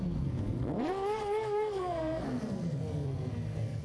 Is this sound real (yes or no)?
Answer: no